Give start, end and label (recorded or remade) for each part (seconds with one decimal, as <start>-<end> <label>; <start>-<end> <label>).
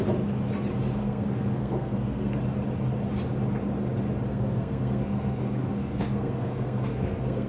0.0-1.0 recorded; 1.0-2.4 remade; 2.4-4.3 recorded; 4.3-7.5 remade